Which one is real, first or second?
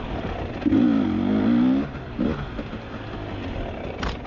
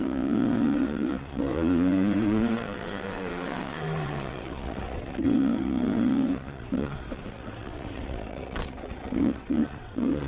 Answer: first